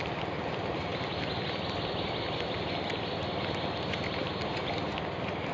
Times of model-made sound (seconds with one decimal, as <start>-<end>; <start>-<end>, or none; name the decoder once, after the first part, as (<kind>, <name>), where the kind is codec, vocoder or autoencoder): none